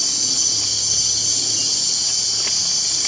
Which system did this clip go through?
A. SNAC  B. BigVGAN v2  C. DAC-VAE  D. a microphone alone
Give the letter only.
D